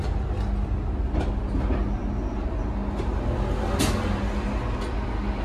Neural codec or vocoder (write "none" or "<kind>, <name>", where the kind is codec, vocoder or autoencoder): none